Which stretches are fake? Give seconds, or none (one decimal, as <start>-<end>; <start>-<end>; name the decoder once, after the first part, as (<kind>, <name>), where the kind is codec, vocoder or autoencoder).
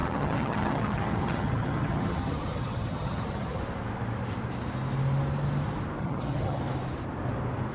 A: 0.0-3.6 (vocoder, HiFi-GAN); 6.0-6.6